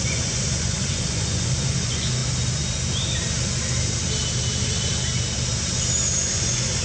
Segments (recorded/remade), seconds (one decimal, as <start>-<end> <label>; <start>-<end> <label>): 0.0-2.2 remade; 2.2-6.3 recorded; 6.3-6.8 remade